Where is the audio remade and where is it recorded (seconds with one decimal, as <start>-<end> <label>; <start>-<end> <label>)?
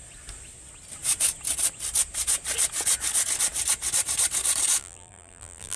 0.0-4.8 recorded; 4.8-5.8 remade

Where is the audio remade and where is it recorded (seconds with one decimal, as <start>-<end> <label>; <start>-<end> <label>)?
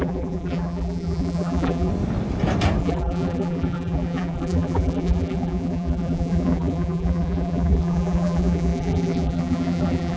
0.0-1.9 remade; 1.9-2.8 recorded; 2.8-10.2 remade